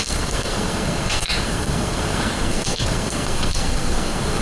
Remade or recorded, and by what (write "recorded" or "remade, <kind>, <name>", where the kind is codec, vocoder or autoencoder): remade, codec, SNAC